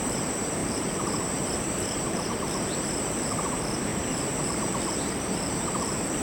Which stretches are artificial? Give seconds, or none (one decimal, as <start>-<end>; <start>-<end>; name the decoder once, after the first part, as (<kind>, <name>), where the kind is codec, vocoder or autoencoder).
0.0-6.2 (vocoder, BigVGAN v2)